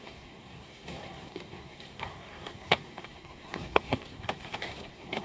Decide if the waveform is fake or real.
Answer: fake